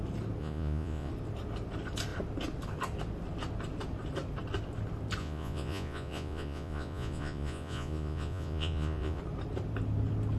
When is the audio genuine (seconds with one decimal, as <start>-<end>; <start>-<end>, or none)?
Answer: 0.0-0.4; 1.1-5.2; 9.2-10.4